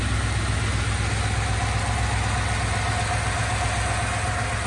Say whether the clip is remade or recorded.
recorded